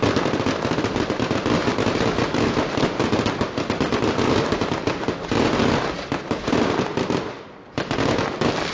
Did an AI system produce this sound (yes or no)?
no